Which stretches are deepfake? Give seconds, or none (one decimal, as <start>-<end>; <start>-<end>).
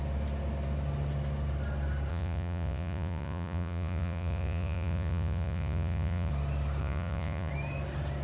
2.1-6.3; 6.8-7.5